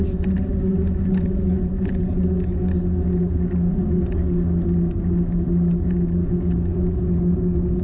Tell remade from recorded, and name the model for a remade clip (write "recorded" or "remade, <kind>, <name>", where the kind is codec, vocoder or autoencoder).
recorded